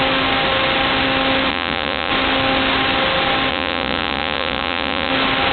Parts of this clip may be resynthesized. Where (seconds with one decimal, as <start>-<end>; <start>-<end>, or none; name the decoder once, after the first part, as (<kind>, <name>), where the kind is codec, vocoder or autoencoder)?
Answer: 1.5-2.1 (vocoder, Vocos); 3.5-5.1